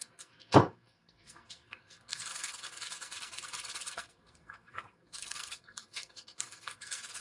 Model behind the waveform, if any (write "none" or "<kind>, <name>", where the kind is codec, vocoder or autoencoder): codec, SNAC